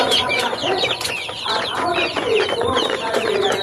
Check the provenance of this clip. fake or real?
fake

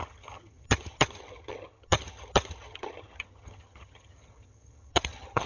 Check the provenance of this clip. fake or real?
fake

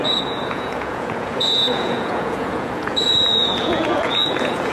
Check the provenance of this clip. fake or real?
fake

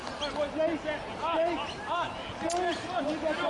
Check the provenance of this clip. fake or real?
real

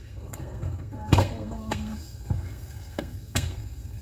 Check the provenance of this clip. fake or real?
fake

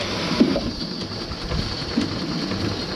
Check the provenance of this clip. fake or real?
real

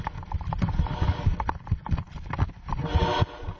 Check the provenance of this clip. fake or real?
real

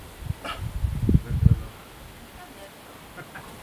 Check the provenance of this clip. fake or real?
real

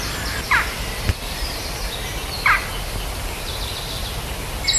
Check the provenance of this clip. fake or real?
real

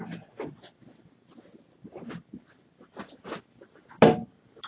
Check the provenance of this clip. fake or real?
real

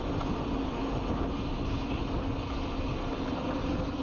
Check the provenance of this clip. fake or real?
real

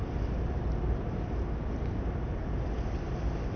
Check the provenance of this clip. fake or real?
real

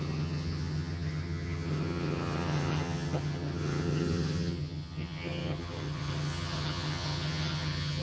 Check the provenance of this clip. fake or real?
fake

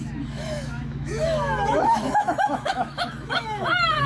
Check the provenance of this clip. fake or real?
fake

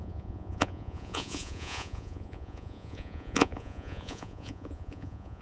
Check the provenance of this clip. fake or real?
fake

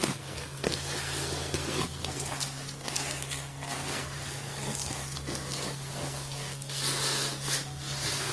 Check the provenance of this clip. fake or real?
fake